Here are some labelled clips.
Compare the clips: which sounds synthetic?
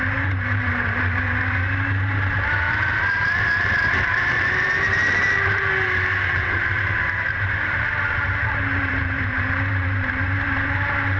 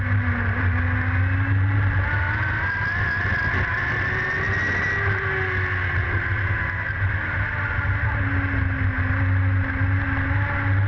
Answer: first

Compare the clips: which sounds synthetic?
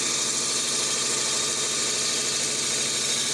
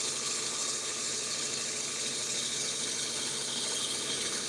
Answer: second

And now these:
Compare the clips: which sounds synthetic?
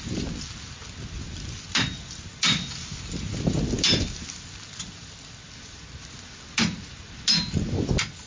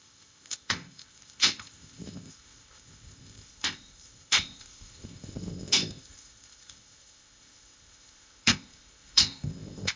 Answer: second